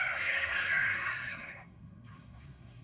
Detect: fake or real fake